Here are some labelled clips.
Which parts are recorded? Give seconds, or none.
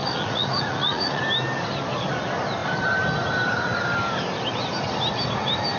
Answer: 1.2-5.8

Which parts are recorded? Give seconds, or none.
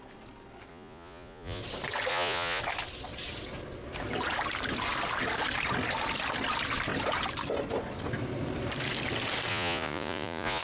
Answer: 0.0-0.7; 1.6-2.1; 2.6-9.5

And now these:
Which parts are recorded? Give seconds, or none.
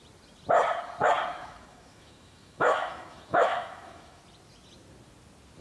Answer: 0.0-1.3; 4.2-5.6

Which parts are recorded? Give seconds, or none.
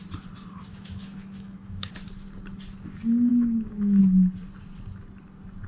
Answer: 0.0-0.7; 1.9-3.3; 4.0-5.7